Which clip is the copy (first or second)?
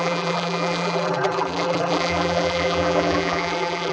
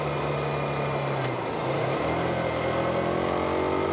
first